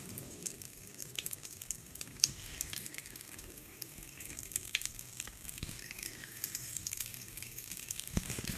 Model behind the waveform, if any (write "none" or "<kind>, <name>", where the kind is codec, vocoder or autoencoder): codec, DAC